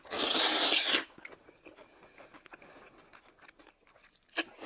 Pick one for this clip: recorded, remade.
recorded